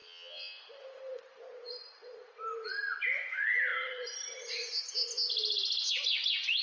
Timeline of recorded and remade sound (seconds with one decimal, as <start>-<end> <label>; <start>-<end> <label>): 0.0-0.6 remade; 0.6-6.6 recorded